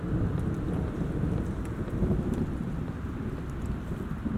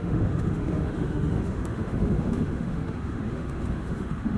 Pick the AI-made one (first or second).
second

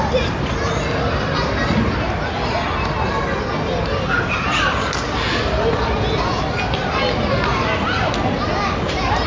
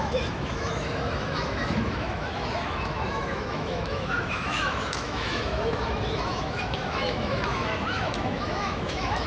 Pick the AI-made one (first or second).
second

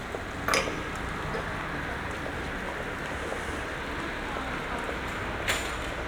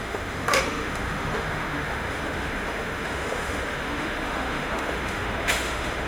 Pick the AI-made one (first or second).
second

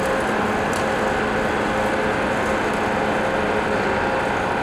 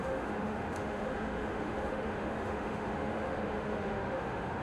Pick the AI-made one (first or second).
second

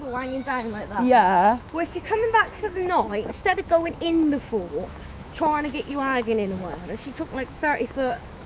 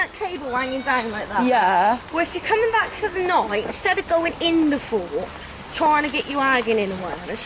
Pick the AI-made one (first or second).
first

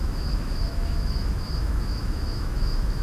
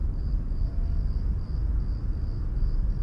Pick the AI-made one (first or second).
first